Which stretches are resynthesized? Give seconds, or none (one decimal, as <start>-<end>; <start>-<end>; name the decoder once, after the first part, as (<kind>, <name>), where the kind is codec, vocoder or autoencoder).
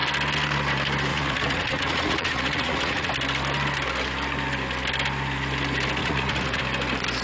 1.1-3.1 (vocoder, Vocos); 6.0-6.6